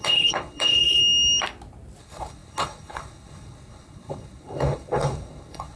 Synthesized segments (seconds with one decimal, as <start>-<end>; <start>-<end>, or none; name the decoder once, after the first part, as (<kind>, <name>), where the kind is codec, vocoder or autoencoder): 0.0-1.0 (codec, HILCodec); 2.0-5.8